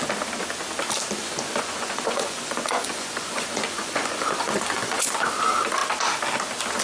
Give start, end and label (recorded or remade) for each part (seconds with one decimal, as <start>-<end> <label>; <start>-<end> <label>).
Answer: 0.0-1.2 recorded; 1.2-5.3 remade; 5.3-6.8 recorded